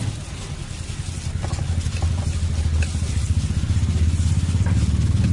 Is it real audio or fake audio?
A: real